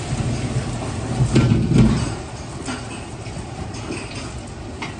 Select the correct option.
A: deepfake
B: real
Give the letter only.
B